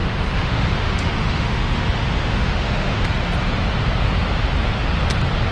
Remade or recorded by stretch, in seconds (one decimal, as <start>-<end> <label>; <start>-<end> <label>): 0.0-3.0 remade; 3.0-5.5 recorded